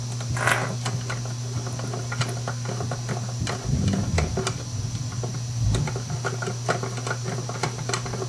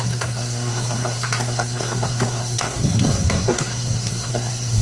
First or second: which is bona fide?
first